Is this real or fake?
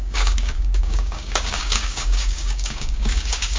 fake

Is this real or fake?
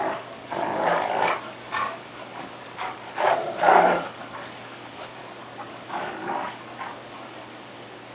fake